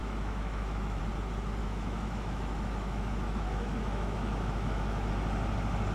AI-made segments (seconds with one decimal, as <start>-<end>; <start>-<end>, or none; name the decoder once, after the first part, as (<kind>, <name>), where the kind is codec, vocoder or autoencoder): 0.0-1.0 (autoencoder, DAC-VAE); 1.6-5.1